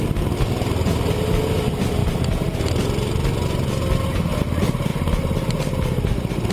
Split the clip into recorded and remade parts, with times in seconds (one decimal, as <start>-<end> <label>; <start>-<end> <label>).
0.0-6.5 recorded